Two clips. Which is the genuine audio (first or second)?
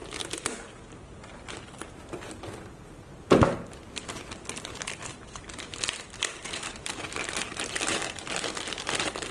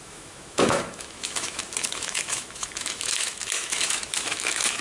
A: first